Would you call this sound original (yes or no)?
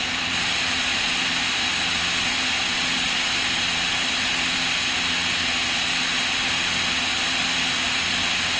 yes